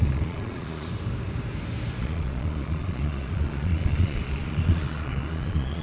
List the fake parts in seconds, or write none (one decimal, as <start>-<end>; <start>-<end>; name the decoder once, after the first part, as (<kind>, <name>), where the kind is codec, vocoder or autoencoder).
0.0-0.9 (vocoder, Vocos); 2.0-5.8